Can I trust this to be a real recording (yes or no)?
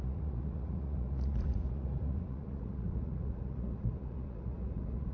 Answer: no